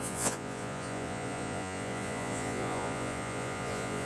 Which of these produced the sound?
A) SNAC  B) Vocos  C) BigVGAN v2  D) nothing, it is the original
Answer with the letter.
B